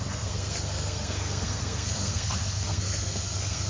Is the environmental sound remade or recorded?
remade